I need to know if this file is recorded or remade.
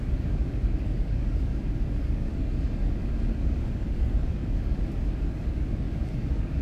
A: remade